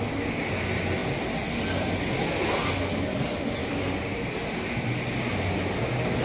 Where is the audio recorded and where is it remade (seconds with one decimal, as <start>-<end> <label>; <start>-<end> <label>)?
0.0-3.6 recorded; 3.6-5.5 remade; 5.5-6.2 recorded